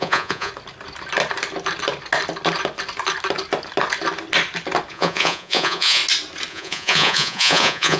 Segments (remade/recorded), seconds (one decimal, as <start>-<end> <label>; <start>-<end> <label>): 0.0-0.5 remade; 0.5-4.9 recorded; 4.9-6.0 remade; 6.0-6.5 recorded; 6.5-8.0 remade

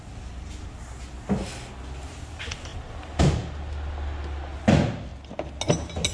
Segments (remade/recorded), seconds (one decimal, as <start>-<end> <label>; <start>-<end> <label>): 0.0-6.1 recorded

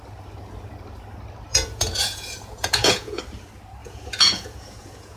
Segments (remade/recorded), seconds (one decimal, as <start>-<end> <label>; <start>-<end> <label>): 0.0-1.5 recorded; 1.5-3.2 remade; 3.2-3.8 recorded; 3.8-5.2 remade

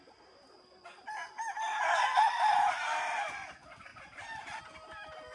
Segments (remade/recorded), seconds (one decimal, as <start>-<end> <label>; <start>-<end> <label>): 0.0-5.3 recorded